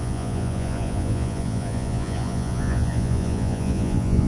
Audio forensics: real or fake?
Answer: fake